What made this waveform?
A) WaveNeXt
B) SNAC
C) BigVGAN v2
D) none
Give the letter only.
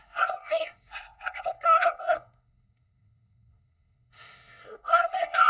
B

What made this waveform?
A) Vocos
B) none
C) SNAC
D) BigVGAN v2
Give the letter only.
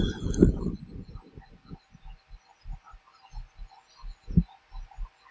B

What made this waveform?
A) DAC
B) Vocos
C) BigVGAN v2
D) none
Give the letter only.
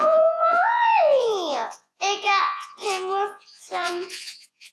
B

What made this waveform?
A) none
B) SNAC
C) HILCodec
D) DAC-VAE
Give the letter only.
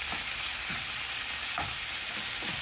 A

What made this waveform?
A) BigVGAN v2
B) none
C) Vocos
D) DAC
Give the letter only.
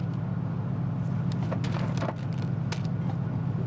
B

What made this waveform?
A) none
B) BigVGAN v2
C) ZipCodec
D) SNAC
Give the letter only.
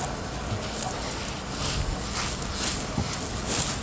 A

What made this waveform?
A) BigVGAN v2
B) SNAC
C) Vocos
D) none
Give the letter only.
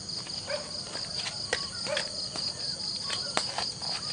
D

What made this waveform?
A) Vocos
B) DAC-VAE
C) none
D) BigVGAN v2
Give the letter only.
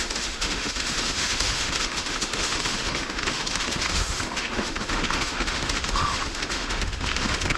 B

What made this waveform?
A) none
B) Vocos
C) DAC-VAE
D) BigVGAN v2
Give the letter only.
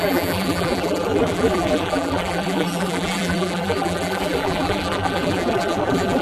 D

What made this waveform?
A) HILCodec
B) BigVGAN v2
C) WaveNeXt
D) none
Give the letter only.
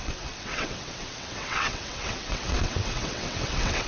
C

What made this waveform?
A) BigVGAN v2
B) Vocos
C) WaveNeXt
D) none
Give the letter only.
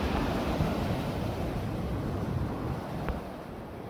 A